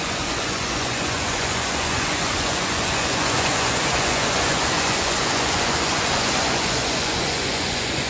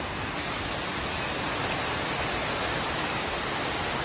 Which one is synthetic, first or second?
first